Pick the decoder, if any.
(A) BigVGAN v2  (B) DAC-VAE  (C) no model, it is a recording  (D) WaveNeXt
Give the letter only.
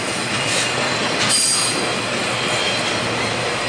C